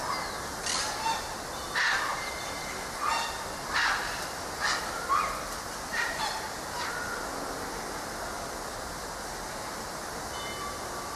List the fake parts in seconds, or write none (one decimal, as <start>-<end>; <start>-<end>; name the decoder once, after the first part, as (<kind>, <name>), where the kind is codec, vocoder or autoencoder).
2.1-7.3 (vocoder, BigVGAN v2)